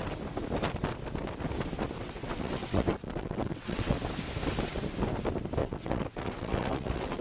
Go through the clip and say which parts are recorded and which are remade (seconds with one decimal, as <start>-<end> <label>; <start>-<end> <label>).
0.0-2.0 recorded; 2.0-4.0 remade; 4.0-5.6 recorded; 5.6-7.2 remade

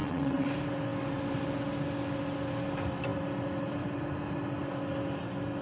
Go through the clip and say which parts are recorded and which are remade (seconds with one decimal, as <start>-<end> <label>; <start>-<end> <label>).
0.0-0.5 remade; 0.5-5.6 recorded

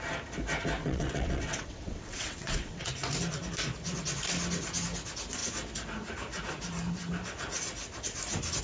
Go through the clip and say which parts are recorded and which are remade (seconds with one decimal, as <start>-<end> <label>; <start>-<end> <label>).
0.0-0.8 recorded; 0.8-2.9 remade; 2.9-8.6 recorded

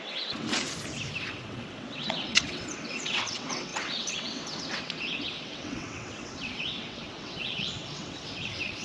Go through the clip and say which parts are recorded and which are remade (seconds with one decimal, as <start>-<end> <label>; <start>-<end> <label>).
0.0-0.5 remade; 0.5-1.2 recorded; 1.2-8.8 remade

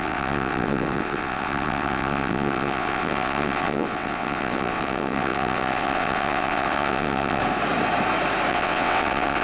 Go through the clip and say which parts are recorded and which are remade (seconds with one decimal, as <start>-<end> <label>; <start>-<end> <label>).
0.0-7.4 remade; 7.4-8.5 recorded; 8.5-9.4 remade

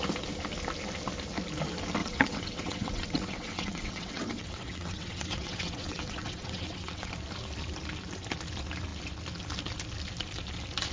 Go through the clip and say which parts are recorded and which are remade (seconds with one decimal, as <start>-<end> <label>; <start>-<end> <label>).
0.0-2.0 recorded; 2.0-7.1 remade; 7.1-10.9 recorded